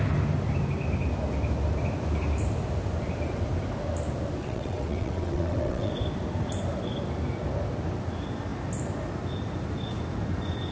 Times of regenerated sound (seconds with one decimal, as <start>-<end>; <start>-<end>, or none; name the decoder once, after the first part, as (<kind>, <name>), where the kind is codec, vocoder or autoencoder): 4.4-5.9 (vocoder, WaveNeXt)